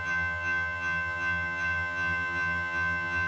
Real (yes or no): no